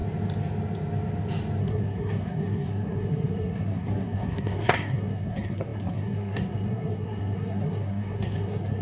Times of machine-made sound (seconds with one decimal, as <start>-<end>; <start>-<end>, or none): 1.6-8.8